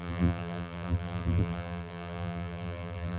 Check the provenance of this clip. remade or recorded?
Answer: remade